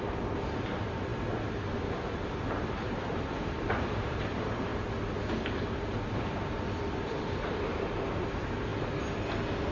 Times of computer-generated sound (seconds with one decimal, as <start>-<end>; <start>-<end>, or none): 0.0-1.1; 2.7-4.7; 5.5-8.7